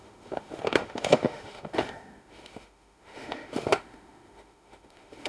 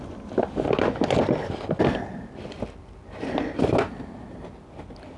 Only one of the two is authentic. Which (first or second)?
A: second